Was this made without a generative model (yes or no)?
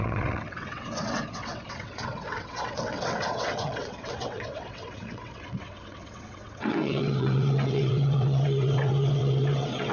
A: no